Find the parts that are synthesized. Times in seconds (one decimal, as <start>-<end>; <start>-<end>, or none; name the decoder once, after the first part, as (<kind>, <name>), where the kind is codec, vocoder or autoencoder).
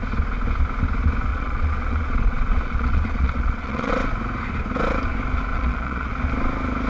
1.3-3.9 (vocoder, Vocos); 5.5-6.1